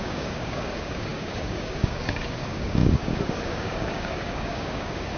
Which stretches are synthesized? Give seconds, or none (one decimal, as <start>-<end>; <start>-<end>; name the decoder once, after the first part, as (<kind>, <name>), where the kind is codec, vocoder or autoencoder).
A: 0.0-5.2 (codec, DAC)

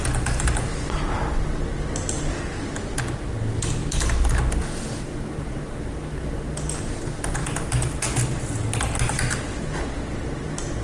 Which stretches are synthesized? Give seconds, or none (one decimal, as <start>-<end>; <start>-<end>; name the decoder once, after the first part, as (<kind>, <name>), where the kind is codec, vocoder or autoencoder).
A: none

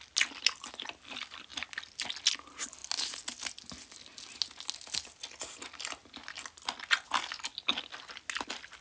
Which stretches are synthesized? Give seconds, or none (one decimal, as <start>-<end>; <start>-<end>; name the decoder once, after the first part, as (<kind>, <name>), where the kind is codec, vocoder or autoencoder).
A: none

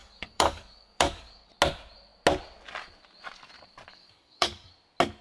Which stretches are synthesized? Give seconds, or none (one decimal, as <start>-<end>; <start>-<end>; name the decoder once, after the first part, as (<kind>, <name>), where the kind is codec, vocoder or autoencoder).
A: 0.0-1.5 (codec, DAC); 3.9-4.7

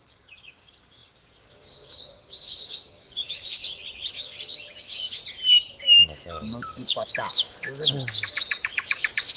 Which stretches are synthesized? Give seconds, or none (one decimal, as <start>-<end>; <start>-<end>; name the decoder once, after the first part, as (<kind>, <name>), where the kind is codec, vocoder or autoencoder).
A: 0.0-3.6 (codec, DAC); 4.1-5.2; 5.8-9.4

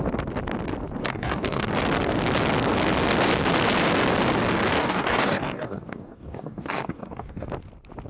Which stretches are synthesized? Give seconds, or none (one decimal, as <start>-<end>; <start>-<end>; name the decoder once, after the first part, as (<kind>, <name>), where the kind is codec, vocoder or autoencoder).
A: 1.0-1.7 (codec, DAC); 4.8-7.5

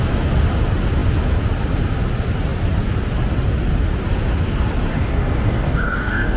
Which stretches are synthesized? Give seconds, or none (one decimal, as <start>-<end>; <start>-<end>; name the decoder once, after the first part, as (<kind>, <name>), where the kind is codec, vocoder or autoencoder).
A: 4.9-6.4 (codec, DAC)